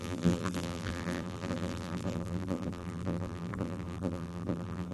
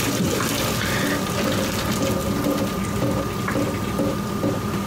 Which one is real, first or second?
second